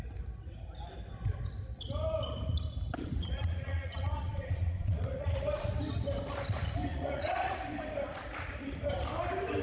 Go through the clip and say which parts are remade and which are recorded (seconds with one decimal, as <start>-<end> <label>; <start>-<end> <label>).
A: 0.0-3.2 recorded; 3.2-5.7 remade; 5.7-6.9 recorded; 6.9-7.6 remade; 7.6-9.6 recorded